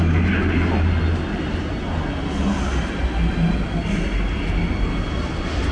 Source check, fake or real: real